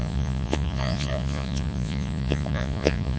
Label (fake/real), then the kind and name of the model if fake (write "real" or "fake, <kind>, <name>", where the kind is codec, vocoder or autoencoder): fake, vocoder, Vocos